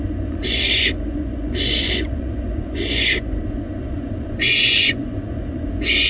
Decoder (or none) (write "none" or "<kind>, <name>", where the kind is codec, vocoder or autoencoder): vocoder, Vocos